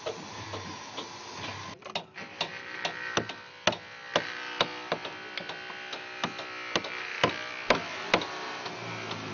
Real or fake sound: real